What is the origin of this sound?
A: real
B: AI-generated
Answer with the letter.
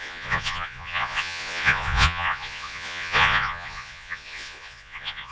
B